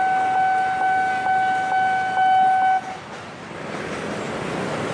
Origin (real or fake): real